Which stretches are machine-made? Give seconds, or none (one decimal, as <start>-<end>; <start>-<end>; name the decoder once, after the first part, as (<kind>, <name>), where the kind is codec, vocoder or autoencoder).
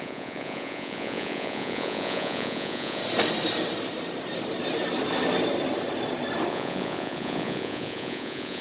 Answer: 0.0-3.0 (vocoder, Vocos); 6.5-8.6